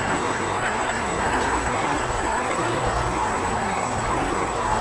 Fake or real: fake